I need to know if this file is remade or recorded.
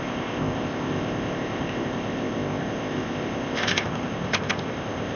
remade